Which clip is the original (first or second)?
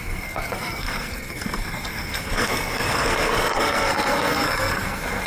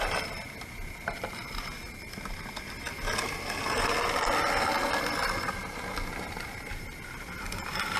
second